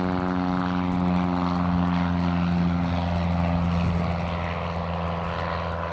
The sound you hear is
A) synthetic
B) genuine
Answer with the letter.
B